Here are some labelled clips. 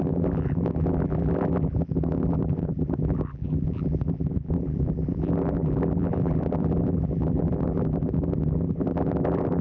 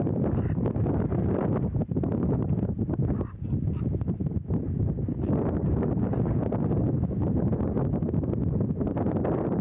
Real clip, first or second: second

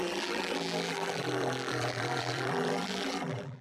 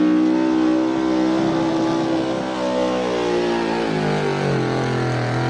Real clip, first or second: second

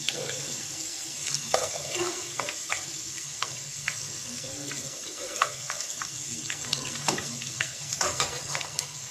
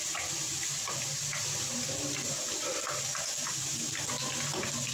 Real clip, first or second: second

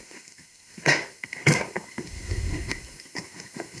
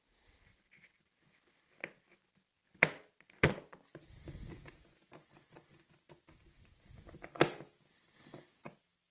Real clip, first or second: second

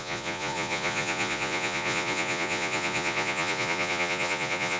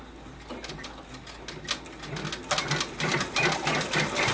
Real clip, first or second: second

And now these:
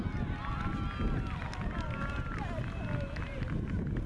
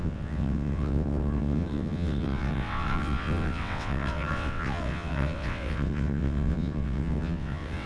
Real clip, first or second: first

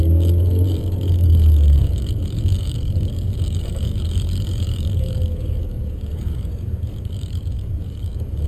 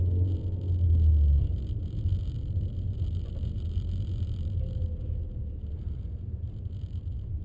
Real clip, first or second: second